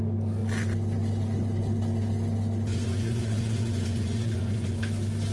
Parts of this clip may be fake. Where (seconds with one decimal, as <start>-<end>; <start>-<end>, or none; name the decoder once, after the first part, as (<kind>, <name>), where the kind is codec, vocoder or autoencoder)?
2.7-4.8 (vocoder, Vocos)